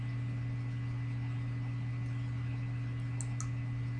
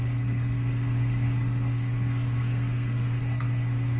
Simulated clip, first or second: second